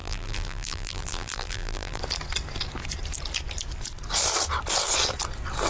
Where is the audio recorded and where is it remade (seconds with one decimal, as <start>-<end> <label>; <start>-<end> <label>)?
0.0-2.0 remade; 2.0-5.7 recorded